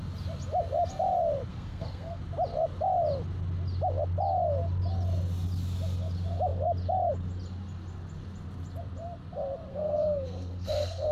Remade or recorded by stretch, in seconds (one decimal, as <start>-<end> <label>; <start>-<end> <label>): 0.0-1.5 recorded; 1.5-2.2 remade; 2.2-9.7 recorded; 9.7-11.1 remade